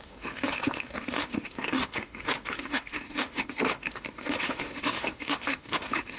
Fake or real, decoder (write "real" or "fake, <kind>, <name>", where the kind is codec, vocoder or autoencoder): fake, autoencoder, DAC-VAE